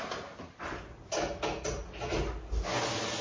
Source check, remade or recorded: recorded